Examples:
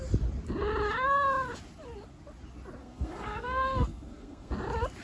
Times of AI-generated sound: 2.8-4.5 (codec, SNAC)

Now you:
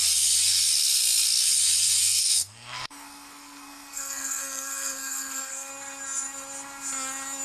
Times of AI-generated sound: 2.0-5.7 (codec, SNAC)

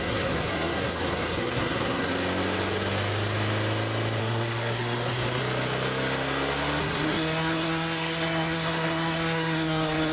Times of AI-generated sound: 0.0-2.1 (codec, SNAC); 4.2-5.4; 6.8-10.1

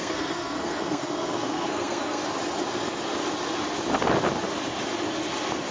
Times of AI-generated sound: 0.0-2.2 (codec, SNAC)

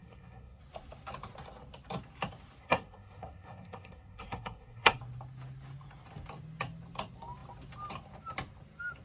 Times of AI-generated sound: 0.0-0.6 (codec, SNAC); 2.6-5.0